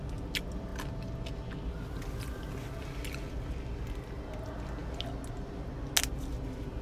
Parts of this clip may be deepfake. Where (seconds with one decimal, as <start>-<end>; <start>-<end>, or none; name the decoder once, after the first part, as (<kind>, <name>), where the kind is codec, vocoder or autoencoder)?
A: none